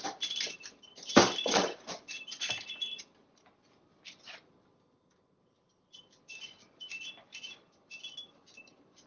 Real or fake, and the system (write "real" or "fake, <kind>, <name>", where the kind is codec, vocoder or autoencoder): fake, vocoder, BigVGAN v2